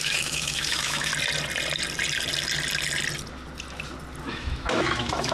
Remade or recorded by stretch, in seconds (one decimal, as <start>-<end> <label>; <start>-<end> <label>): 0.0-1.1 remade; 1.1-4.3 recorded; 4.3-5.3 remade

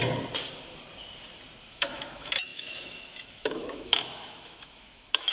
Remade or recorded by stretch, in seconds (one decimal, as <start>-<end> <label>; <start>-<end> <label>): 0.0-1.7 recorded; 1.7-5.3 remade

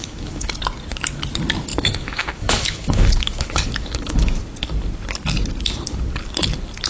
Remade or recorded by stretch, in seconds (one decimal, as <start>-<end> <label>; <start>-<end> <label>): 0.0-0.5 remade; 0.5-1.7 recorded; 1.7-4.4 remade; 4.4-6.9 recorded

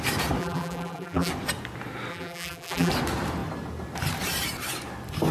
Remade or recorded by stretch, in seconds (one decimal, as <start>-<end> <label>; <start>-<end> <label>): 0.0-0.4 recorded; 0.4-1.3 remade; 1.3-2.1 recorded; 2.1-2.9 remade; 2.9-5.3 recorded